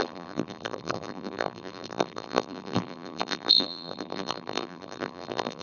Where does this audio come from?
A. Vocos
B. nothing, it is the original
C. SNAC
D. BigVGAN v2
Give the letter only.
D